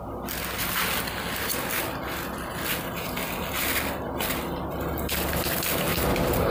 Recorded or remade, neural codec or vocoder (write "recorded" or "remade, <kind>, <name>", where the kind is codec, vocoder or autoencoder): recorded